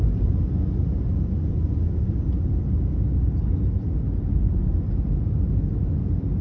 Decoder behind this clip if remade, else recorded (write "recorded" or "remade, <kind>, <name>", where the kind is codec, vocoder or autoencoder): recorded